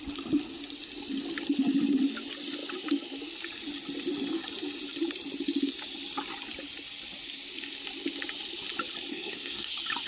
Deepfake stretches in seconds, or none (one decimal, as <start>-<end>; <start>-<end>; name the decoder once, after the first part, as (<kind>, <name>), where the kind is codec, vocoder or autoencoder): 9.1-9.7 (codec, SNAC)